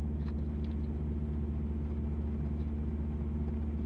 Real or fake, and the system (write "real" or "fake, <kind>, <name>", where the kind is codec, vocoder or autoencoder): real